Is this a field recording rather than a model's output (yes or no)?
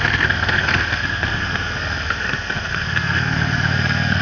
no